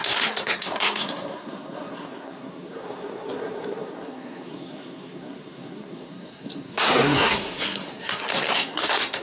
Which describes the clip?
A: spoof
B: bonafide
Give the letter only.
A